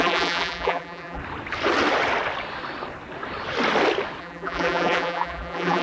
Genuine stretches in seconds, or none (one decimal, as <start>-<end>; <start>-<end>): 1.2-4.2